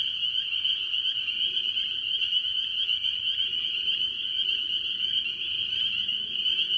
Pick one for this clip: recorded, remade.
recorded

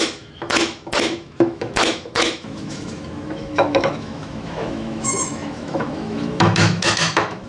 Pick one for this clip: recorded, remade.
remade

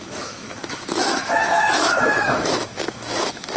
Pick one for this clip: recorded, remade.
remade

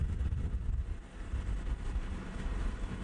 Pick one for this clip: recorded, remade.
recorded